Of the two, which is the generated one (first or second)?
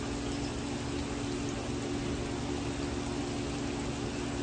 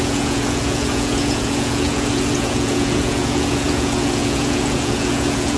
second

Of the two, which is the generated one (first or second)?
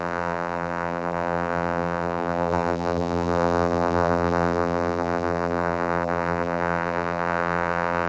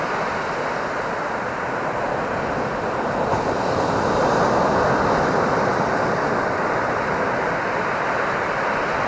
first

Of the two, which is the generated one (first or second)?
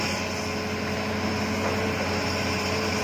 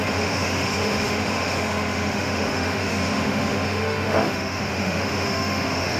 second